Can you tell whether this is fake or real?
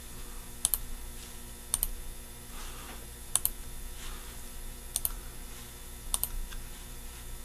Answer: real